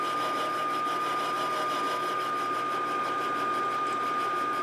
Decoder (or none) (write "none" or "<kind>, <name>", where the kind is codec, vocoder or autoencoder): none